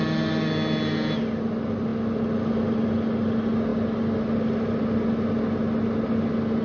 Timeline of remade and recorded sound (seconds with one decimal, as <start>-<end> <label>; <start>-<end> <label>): 0.0-6.6 recorded